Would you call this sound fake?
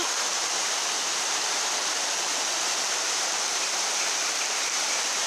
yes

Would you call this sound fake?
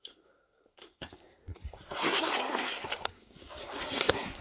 yes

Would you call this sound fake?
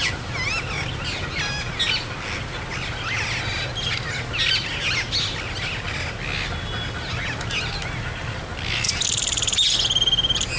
no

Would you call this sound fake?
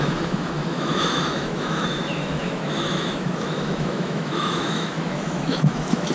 yes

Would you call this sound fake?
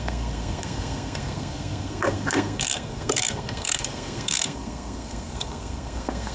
yes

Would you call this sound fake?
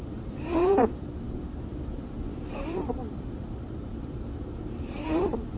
yes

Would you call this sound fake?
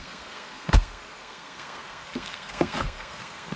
yes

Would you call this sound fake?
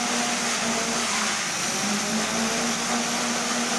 no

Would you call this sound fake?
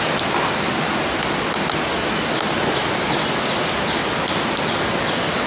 no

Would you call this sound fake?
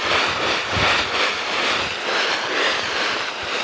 no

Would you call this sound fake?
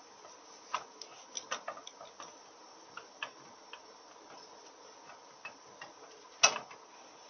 no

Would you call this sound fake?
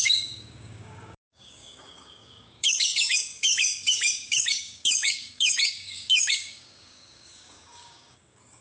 yes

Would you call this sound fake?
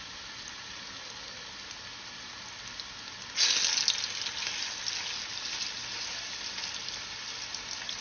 no